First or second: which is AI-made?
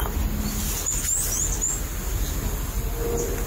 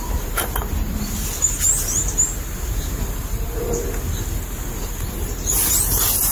second